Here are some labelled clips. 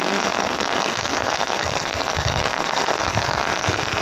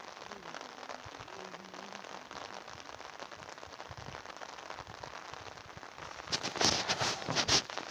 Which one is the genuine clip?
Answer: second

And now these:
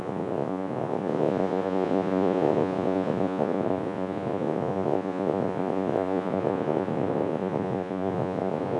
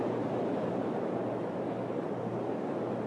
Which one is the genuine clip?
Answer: second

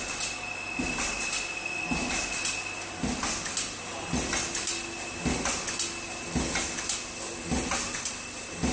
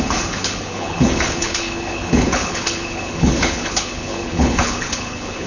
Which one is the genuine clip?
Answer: first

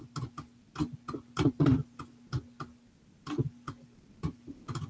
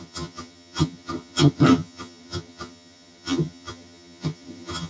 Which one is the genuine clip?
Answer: first